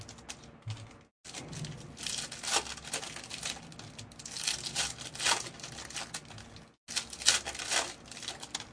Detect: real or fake real